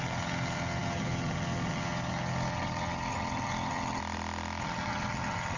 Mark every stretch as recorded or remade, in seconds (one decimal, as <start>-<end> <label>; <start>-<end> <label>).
0.0-4.0 remade; 4.0-4.6 recorded; 4.6-5.6 remade